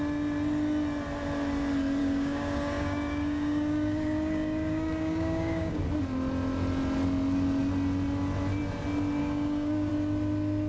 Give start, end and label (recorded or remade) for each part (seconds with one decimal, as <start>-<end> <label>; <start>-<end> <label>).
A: 0.0-2.0 recorded; 2.0-5.8 remade; 5.8-9.2 recorded; 9.2-9.9 remade; 9.9-10.7 recorded

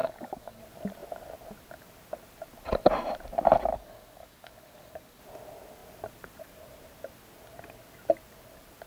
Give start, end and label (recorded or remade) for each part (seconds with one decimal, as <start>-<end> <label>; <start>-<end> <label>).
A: 0.0-0.6 remade; 0.6-3.7 recorded; 3.7-5.2 remade; 5.2-8.9 recorded

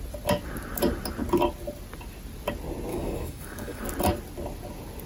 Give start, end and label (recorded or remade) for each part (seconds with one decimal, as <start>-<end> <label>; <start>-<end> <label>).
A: 0.0-2.9 recorded; 2.9-3.8 remade; 3.8-5.1 recorded

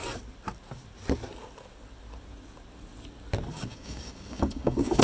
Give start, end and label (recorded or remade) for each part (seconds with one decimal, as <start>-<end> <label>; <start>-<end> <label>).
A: 0.0-3.5 recorded; 3.5-5.0 remade

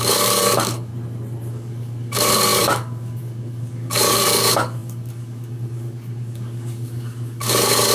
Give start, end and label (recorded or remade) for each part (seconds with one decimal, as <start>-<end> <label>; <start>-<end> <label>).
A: 0.0-0.9 remade; 0.9-1.5 recorded; 1.5-7.9 remade

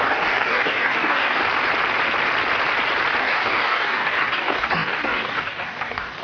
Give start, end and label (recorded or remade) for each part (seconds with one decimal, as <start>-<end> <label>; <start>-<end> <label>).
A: 0.0-1.4 remade; 1.4-3.2 recorded; 3.2-6.2 remade